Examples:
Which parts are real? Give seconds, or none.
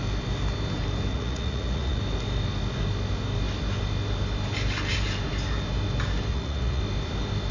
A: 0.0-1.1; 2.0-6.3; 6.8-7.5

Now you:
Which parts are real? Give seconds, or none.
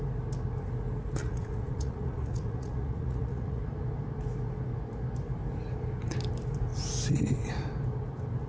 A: 0.0-1.2; 3.6-8.5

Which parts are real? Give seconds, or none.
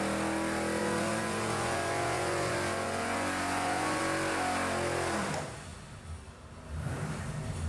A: 0.0-0.8; 4.0-7.7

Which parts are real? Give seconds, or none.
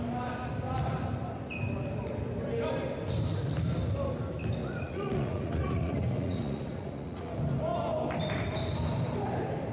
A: 0.0-4.6; 7.3-9.7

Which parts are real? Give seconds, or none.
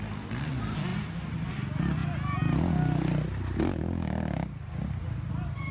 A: 0.0-5.7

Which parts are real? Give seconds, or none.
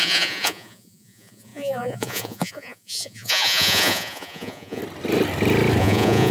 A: 4.8-5.8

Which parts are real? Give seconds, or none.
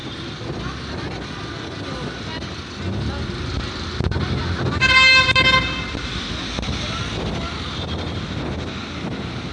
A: 0.0-9.5